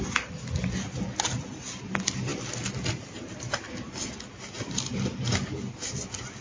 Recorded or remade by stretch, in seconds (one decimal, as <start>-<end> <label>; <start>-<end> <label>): 0.0-6.4 recorded